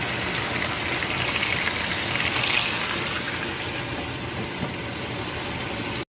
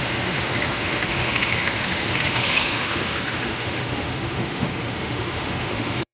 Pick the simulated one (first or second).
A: second